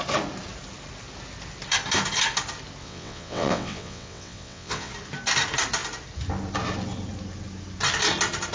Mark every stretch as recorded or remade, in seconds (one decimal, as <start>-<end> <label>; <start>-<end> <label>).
0.0-2.8 recorded; 2.8-4.9 remade; 4.9-8.5 recorded